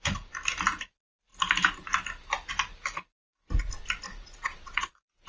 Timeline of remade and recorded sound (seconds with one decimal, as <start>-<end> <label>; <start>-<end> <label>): 0.0-4.1 recorded; 4.1-5.3 remade